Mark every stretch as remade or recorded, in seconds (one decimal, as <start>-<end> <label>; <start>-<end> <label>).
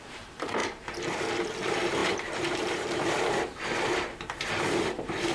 0.0-0.6 remade; 0.6-1.5 recorded; 1.5-5.3 remade